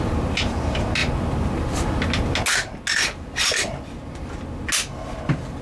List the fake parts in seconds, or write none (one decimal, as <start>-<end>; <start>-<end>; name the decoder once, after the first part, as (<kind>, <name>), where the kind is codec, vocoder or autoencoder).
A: none